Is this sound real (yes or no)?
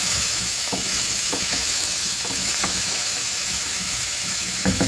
no